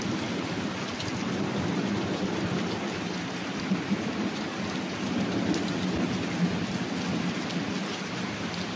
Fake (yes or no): no